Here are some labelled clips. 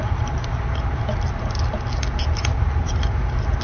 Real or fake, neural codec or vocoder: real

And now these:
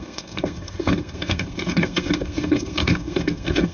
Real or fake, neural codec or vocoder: fake, codec, SNAC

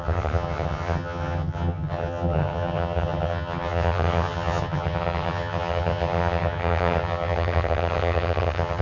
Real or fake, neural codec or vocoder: fake, vocoder, HiFi-GAN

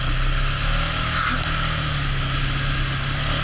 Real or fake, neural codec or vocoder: real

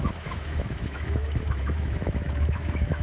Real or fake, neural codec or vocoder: fake, autoencoder, DAC-VAE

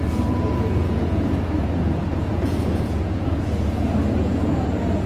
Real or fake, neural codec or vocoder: fake, vocoder, Vocos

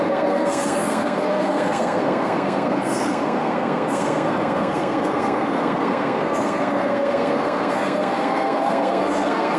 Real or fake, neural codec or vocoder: fake, codec, SNAC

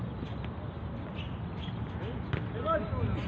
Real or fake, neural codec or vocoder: real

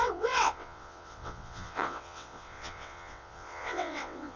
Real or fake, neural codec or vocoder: fake, vocoder, WaveNeXt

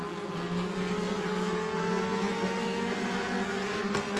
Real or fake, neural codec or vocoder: fake, codec, SNAC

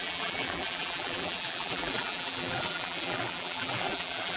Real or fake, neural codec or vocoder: fake, vocoder, BigVGAN v2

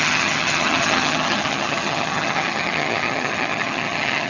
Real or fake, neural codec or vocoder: fake, vocoder, HiFi-GAN